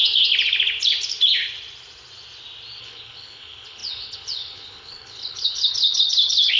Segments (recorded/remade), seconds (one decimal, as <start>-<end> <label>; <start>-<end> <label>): 0.0-2.8 recorded; 2.8-6.6 remade